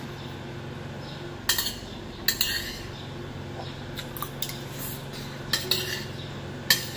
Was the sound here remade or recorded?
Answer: recorded